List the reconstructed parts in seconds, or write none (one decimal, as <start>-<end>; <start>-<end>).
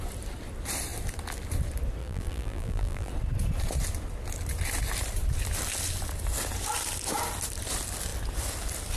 2.0-3.1